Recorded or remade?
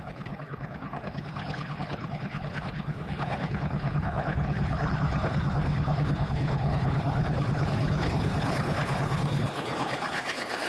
remade